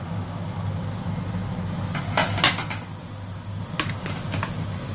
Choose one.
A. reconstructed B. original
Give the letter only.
B